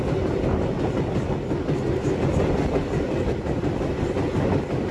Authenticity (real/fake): real